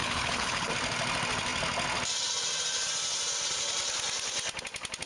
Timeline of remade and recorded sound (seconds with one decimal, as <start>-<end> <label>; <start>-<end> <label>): 0.0-0.7 remade; 0.7-5.1 recorded